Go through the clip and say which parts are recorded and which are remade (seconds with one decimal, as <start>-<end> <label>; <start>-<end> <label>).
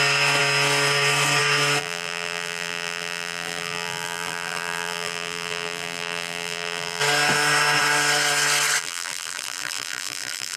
0.0-1.8 recorded; 1.8-7.0 remade; 7.0-8.8 recorded; 8.8-10.6 remade